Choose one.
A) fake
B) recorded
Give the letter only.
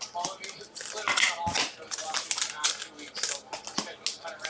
B